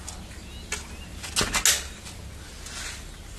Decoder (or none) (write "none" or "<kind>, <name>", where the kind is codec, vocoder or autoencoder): none